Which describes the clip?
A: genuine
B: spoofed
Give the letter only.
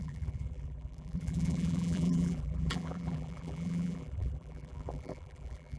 B